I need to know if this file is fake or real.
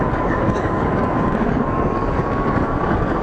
fake